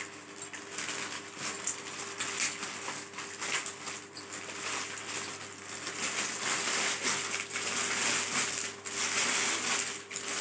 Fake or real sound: real